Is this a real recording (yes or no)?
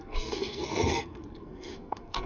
no